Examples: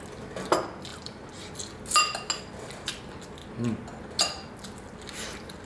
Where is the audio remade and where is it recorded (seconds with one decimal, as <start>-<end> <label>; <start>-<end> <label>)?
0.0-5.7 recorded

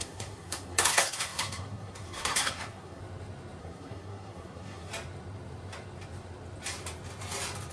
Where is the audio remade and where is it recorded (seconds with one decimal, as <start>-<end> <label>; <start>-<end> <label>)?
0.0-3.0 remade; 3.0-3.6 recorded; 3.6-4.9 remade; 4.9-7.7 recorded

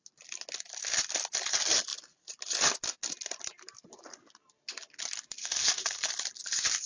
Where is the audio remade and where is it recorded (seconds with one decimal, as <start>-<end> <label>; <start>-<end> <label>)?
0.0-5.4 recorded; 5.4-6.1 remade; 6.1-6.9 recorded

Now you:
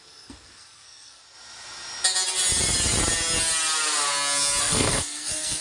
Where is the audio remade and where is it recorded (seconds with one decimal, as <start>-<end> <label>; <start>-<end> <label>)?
0.0-1.2 remade; 1.2-4.6 recorded; 4.6-5.6 remade

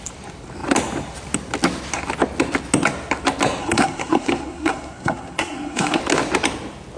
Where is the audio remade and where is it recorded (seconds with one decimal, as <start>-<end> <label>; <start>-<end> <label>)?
0.0-3.6 recorded; 3.6-6.0 remade; 6.0-7.0 recorded